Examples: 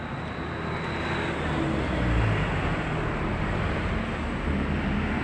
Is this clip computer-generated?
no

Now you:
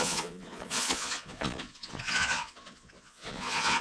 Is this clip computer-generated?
yes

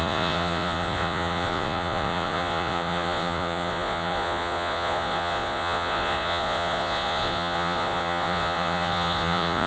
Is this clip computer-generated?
yes